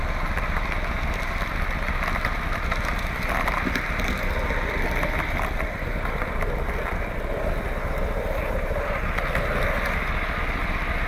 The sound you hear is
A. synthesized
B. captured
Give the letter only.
B